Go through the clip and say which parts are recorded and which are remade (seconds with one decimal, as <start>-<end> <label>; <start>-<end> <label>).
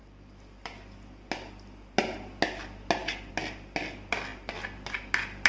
0.0-5.5 recorded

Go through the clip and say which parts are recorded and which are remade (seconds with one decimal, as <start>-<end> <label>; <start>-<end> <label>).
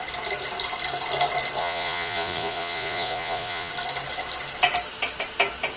0.0-1.6 recorded; 1.6-3.7 remade; 3.7-5.8 recorded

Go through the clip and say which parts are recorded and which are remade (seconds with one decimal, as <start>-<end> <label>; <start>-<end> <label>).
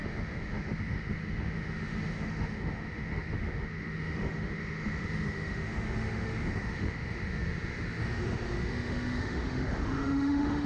0.0-10.7 remade